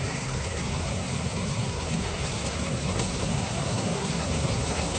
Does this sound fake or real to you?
fake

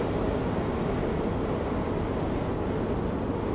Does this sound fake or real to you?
real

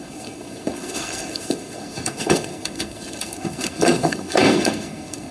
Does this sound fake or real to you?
fake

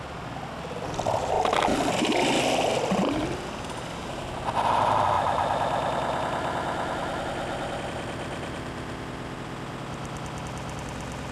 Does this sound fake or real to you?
real